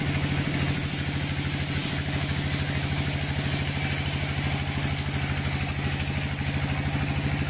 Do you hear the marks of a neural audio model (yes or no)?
no